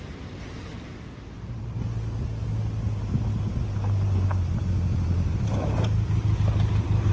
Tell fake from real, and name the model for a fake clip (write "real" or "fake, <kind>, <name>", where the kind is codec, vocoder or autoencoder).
real